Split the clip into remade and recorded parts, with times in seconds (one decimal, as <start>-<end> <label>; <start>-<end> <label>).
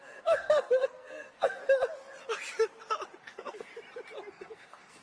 0.0-1.6 remade; 1.6-3.2 recorded; 3.2-3.7 remade; 3.7-4.3 recorded; 4.3-5.0 remade